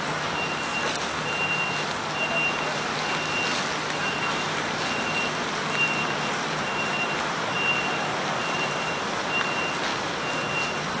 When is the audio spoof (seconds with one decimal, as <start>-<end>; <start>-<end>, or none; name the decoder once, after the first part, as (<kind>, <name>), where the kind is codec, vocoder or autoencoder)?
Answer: 0.0-0.7 (vocoder, BigVGAN v2); 4.1-9.9